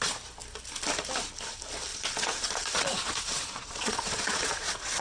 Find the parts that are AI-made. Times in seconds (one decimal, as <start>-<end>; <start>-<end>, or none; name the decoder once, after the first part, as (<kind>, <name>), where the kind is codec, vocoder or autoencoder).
1.9-5.0 (vocoder, Vocos)